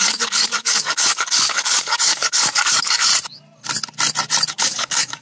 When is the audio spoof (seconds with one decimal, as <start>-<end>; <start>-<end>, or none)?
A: 0.0-3.1; 4.5-5.2